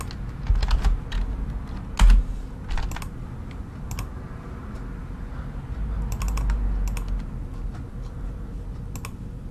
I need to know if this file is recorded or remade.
recorded